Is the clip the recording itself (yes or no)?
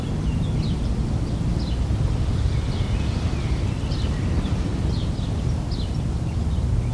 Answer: yes